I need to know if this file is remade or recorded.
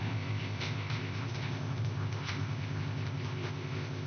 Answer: remade